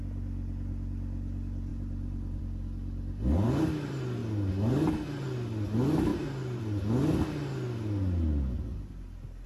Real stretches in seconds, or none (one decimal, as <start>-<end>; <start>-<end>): 0.0-1.7; 2.4-6.1; 6.6-9.5